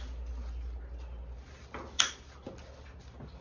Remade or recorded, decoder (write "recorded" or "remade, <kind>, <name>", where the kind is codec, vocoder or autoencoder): recorded